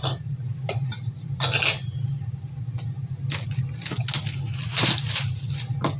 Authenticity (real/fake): real